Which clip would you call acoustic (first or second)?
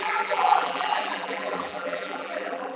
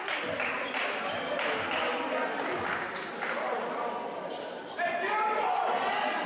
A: second